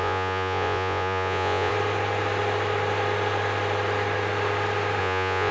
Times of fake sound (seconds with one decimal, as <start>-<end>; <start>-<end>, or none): 0.0-1.7; 5.0-5.5

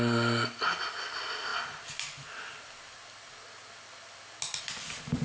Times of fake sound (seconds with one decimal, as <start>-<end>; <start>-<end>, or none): none

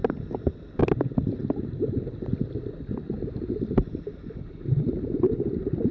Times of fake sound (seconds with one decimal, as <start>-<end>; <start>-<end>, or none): none

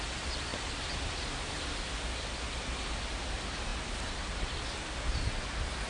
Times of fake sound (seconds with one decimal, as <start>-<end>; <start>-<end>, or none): none

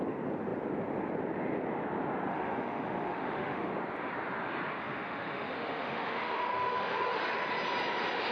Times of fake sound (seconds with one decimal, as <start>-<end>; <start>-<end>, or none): 2.3-3.7; 4.8-7.2

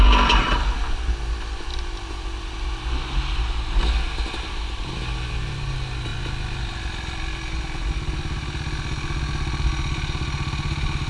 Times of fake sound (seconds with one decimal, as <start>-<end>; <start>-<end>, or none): none